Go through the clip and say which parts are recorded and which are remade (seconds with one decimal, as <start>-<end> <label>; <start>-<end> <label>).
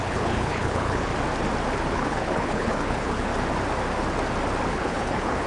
0.0-1.1 remade; 1.1-1.9 recorded; 1.9-3.3 remade; 3.3-4.7 recorded; 4.7-5.5 remade